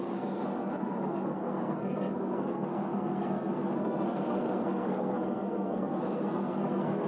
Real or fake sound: fake